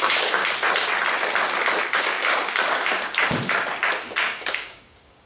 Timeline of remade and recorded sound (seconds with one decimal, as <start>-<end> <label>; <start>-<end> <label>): 0.0-0.4 remade; 0.4-1.8 recorded; 1.8-3.7 remade; 3.7-4.2 recorded; 4.2-5.3 remade